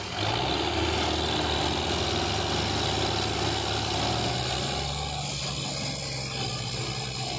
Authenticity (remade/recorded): recorded